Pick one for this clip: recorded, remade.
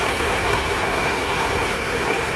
remade